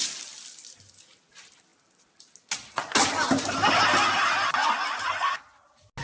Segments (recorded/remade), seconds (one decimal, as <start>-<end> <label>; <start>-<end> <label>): 0.0-6.0 recorded